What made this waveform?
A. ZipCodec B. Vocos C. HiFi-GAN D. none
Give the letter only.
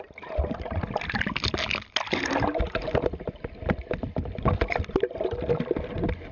D